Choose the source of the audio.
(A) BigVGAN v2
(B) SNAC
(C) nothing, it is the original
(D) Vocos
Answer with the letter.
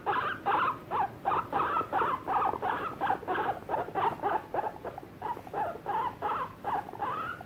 C